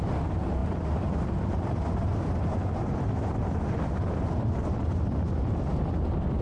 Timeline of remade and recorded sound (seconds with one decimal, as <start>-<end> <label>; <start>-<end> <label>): 0.0-6.4 recorded

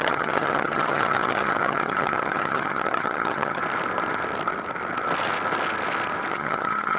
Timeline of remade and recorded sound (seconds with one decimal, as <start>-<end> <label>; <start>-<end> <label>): 0.0-3.6 remade; 3.6-6.3 recorded; 6.3-7.0 remade

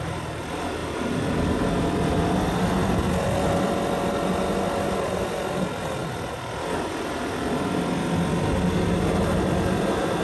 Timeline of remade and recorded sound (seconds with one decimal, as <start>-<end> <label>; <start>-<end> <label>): 0.0-10.2 recorded

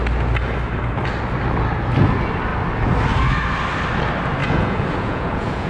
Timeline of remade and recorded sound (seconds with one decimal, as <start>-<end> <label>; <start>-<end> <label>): 0.0-4.4 recorded; 4.4-5.7 remade

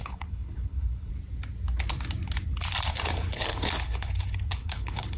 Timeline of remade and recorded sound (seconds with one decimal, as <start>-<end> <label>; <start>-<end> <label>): 0.0-1.1 remade; 1.1-3.1 recorded; 3.1-5.2 remade

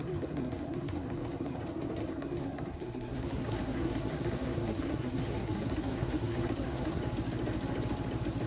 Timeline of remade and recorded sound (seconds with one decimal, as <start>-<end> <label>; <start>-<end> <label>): 0.0-1.6 remade; 1.6-2.0 recorded; 2.0-7.0 remade; 7.0-8.5 recorded

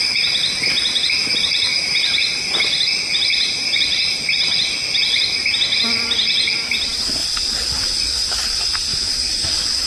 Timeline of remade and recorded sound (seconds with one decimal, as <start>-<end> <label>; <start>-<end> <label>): 0.0-0.4 recorded; 0.4-4.2 remade; 4.2-8.9 recorded; 8.9-9.9 remade

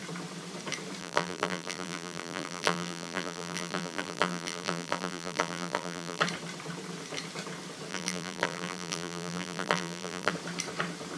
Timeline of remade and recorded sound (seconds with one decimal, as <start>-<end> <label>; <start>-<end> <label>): 0.0-1.0 recorded; 1.0-6.2 remade; 6.2-7.9 recorded; 7.9-10.3 remade; 10.3-11.2 recorded